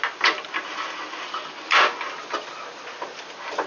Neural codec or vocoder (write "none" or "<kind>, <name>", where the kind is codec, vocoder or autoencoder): none